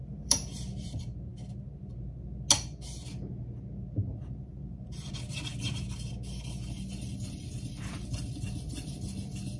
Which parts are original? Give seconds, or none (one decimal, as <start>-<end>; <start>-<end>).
1.0-4.2; 5.1-9.6